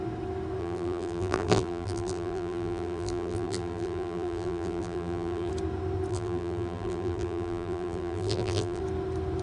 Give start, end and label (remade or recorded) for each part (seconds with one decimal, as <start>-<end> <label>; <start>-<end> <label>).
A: 0.0-0.6 recorded; 0.6-5.5 remade; 5.5-6.1 recorded; 6.1-8.8 remade; 8.8-9.4 recorded